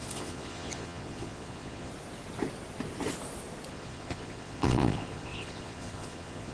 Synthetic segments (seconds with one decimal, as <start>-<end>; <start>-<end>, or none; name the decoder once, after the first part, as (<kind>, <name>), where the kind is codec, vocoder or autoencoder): 0.0-1.9 (vocoder, Vocos); 3.7-6.5